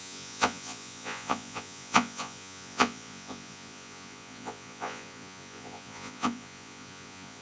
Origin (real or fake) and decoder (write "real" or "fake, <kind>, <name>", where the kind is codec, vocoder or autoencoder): fake, vocoder, Vocos